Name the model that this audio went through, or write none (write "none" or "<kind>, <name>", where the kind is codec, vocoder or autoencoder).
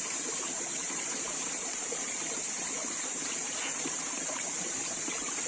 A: vocoder, BigVGAN v2